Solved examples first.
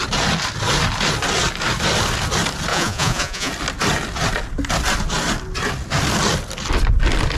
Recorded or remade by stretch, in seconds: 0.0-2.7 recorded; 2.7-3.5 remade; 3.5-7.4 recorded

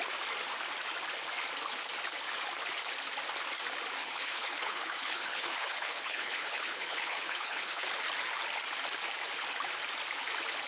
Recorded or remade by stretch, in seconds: 0.0-4.0 recorded; 4.0-7.9 remade; 7.9-10.7 recorded

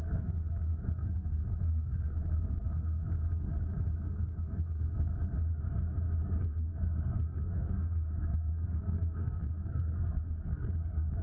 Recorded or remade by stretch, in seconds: 0.0-3.5 remade; 3.5-4.0 recorded; 4.0-5.1 remade; 5.1-6.2 recorded; 6.2-11.2 remade

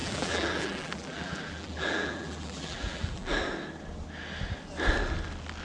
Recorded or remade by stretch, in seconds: 0.0-3.4 remade; 3.4-5.6 recorded

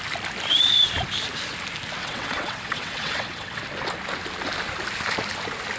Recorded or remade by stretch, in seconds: 0.0-2.0 recorded; 2.0-3.6 remade; 3.6-5.8 recorded

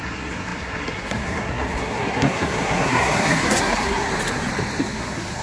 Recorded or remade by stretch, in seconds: 0.0-4.1 remade; 4.1-4.8 recorded; 4.8-5.4 remade

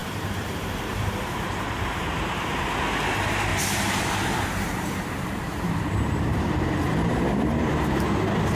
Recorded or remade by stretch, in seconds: 0.0-2.7 remade; 2.7-3.5 recorded; 3.5-8.6 remade